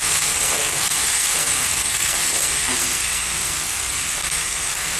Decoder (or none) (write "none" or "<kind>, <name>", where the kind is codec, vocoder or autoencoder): codec, SNAC